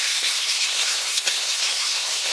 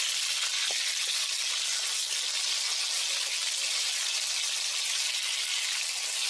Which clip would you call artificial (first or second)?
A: first